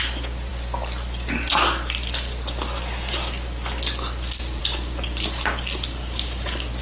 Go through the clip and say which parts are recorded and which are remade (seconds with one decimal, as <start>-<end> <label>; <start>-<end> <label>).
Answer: 0.0-6.8 recorded